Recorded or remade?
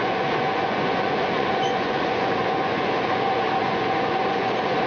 remade